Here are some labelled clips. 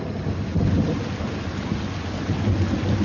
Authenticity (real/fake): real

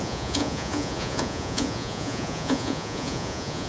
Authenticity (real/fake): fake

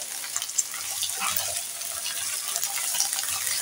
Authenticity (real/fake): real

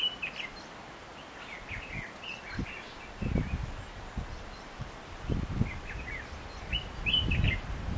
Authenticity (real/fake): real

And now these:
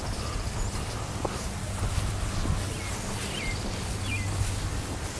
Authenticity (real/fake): real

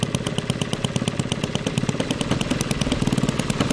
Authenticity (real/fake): real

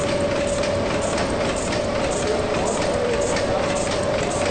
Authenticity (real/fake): real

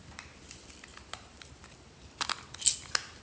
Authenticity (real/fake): real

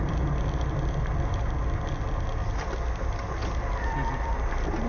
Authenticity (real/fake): real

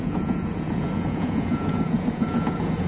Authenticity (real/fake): fake